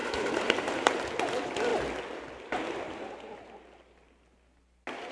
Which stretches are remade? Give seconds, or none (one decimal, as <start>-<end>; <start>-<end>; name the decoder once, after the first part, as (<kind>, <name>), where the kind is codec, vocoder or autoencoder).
0.0-1.0 (vocoder, BigVGAN v2)

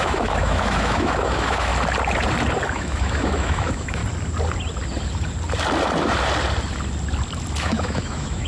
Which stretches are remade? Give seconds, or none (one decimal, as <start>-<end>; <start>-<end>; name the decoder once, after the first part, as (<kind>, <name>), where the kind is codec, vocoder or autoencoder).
0.0-1.7 (autoencoder, DAC-VAE); 2.7-4.0; 7.6-8.5